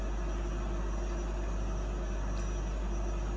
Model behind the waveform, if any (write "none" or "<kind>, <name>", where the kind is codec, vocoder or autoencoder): none